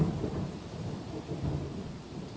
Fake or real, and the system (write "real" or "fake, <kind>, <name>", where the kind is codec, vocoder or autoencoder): fake, vocoder, BigVGAN v2